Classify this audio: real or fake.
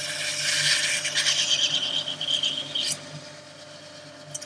real